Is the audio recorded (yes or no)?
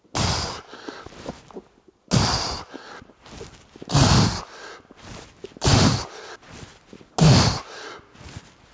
yes